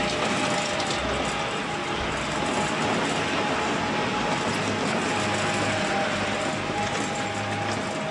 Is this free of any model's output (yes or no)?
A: yes